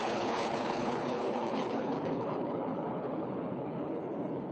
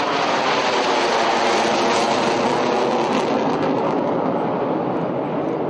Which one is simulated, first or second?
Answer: first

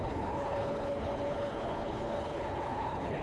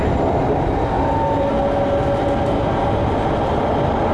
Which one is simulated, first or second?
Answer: first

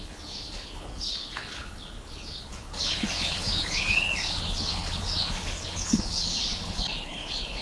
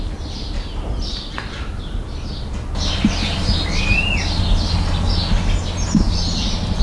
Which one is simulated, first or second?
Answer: first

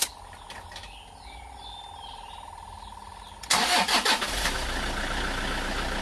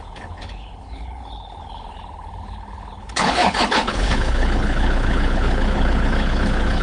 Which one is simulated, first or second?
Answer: second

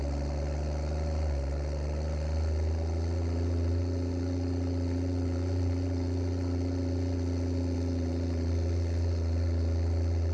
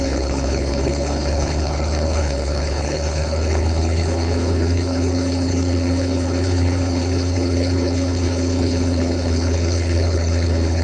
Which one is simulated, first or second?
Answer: second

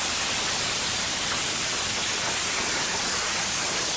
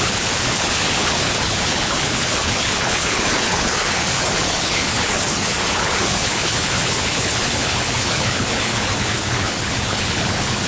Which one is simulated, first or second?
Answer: second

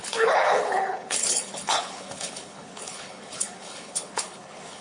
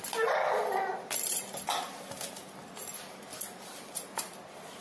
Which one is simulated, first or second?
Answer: first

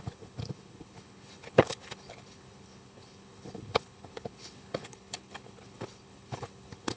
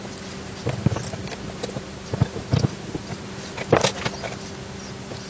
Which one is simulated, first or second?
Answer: first